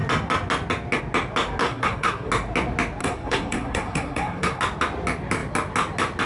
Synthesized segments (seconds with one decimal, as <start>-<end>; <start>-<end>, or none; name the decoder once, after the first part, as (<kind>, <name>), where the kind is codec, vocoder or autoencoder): 1.6-2.3 (codec, SNAC); 3.0-4.6